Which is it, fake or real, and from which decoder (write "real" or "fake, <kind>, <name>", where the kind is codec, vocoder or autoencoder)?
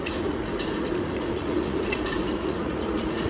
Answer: fake, vocoder, Vocos